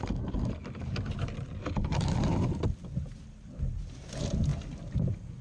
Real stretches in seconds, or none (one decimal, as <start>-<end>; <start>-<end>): 0.0-5.4